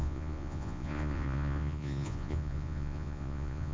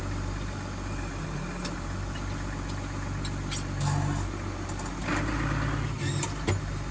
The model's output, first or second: first